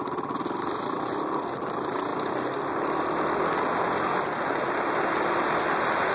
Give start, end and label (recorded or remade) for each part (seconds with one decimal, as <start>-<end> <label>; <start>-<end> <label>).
0.0-6.1 recorded

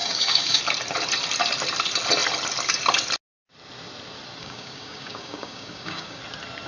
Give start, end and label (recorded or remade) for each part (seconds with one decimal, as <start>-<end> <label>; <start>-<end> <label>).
0.0-0.6 remade; 0.6-4.4 recorded; 4.4-6.2 remade; 6.2-6.7 recorded